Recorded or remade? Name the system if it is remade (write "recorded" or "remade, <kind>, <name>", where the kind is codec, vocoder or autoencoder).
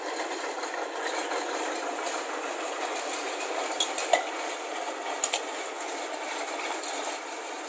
recorded